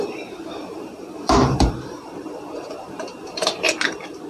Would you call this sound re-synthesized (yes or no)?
yes